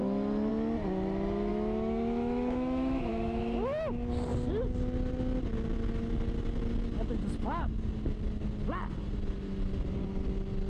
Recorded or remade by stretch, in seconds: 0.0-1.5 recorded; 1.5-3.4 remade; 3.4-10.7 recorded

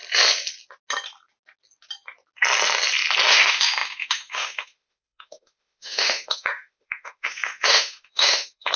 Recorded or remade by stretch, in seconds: 0.0-3.3 recorded; 3.3-8.8 remade

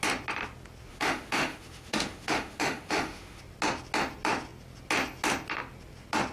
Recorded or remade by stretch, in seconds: 0.0-0.9 recorded; 0.9-3.4 remade; 3.4-6.3 recorded

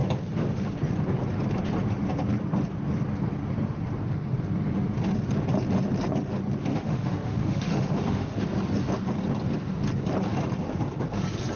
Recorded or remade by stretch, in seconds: 0.0-6.7 recorded; 6.7-8.4 remade; 8.4-11.6 recorded